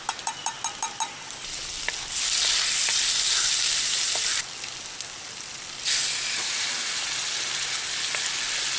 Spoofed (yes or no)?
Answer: no